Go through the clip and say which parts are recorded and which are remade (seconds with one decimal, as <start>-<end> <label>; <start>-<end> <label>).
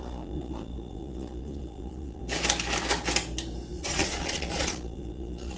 0.0-2.2 remade; 2.2-3.7 recorded; 3.7-5.6 remade